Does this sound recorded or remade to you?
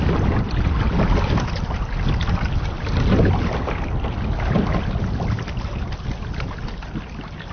recorded